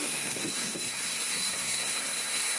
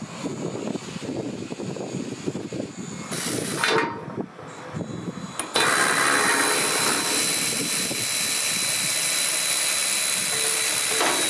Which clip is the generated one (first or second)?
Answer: first